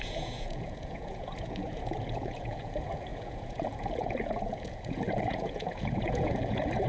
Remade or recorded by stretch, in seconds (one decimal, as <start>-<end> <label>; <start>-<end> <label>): 0.0-6.9 remade